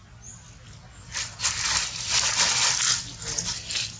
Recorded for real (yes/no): yes